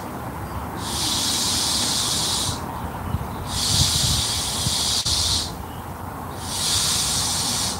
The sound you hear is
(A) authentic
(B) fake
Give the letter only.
A